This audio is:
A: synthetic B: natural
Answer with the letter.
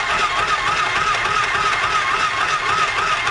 B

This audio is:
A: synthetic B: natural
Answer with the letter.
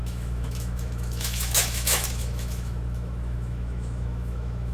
A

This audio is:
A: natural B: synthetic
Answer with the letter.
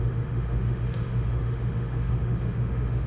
B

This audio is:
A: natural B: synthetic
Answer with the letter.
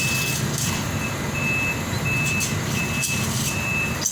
A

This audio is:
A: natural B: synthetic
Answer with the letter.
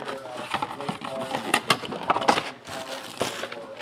A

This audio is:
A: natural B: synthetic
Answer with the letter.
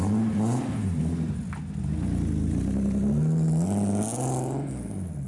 A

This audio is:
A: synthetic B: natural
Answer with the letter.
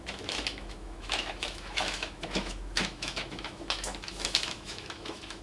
A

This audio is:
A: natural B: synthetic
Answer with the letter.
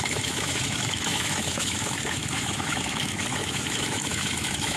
B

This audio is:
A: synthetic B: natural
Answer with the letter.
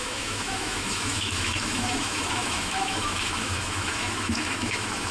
A